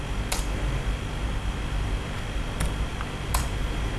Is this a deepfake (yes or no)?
no